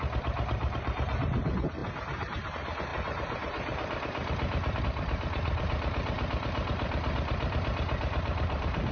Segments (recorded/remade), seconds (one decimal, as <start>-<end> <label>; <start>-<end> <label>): 0.0-8.9 remade